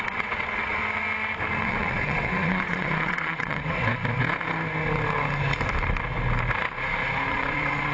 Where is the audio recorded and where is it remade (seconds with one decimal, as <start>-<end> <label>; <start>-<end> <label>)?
0.0-0.8 remade; 0.8-1.6 recorded; 1.6-3.9 remade; 3.9-7.3 recorded; 7.3-7.9 remade